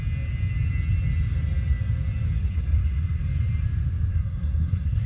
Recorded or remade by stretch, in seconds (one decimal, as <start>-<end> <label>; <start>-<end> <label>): 0.0-2.4 recorded; 2.4-3.2 remade; 3.2-4.1 recorded; 4.1-5.1 remade